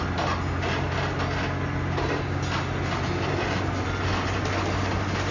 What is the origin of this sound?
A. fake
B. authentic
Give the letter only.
B